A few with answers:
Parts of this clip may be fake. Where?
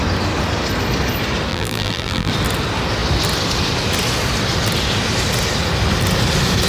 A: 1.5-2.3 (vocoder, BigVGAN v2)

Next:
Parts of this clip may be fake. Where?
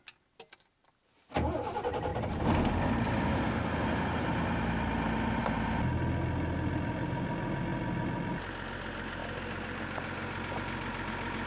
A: none